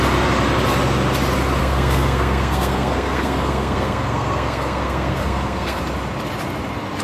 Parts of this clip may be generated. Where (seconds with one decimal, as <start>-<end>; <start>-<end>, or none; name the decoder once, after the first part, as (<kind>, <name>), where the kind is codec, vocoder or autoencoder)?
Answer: 1.6-5.8 (codec, SNAC)